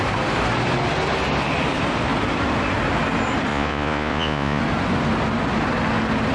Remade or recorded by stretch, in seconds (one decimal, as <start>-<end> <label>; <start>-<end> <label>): 0.0-3.5 recorded; 3.5-4.6 remade; 4.6-6.3 recorded